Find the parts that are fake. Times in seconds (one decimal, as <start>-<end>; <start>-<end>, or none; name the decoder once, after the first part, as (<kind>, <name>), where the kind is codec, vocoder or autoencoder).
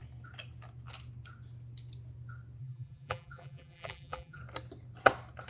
2.6-4.4 (vocoder, BigVGAN v2)